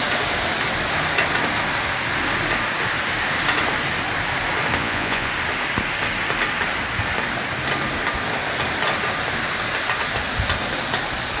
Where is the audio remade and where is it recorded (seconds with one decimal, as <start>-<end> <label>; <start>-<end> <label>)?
0.0-4.8 recorded; 4.8-5.3 remade; 5.3-11.4 recorded